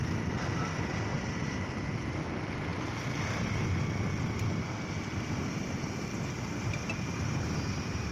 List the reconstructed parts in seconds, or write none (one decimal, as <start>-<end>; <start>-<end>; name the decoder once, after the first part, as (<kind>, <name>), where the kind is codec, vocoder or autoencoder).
1.1-1.7 (vocoder, BigVGAN v2)